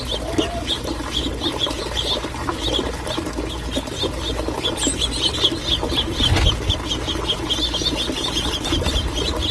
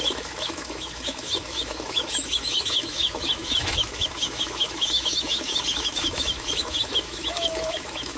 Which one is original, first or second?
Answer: first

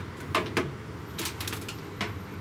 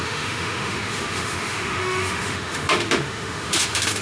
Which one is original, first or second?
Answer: first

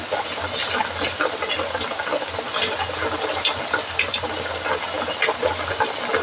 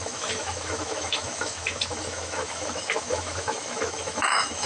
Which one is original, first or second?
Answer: first